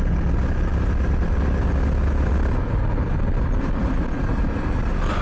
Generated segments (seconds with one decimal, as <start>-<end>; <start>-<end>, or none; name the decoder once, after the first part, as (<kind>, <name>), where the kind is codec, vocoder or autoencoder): none